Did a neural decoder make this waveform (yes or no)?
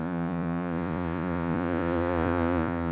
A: yes